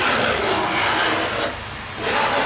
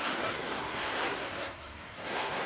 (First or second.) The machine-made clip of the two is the second